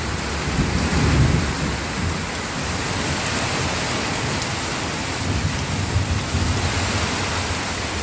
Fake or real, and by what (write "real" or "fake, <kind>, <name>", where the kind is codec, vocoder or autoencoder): real